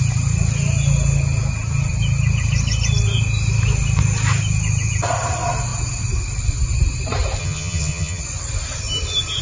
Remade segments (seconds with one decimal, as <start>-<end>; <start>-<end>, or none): 7.4-8.2